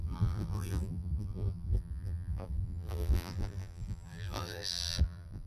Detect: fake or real fake